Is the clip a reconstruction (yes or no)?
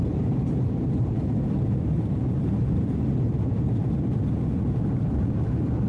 yes